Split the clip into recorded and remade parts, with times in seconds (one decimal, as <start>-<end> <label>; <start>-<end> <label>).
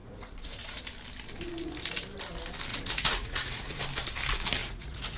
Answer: 0.0-0.8 remade; 0.8-2.7 recorded; 2.7-3.8 remade; 3.8-4.6 recorded; 4.6-5.2 remade